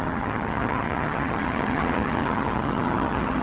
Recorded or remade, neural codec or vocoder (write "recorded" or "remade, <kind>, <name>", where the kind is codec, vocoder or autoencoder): remade, vocoder, HiFi-GAN